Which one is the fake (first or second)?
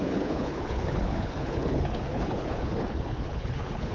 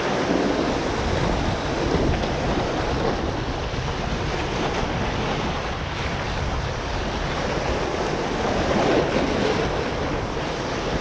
first